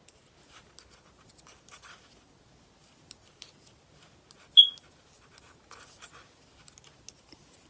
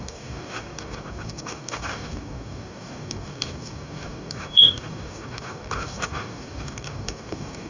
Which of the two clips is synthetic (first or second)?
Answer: second